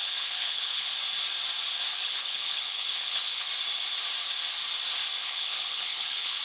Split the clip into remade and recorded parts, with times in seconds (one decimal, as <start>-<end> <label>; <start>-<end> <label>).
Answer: 0.0-0.9 remade; 0.9-1.9 recorded; 1.9-3.5 remade; 3.5-5.2 recorded; 5.2-6.4 remade